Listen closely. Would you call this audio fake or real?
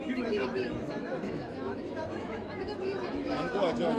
fake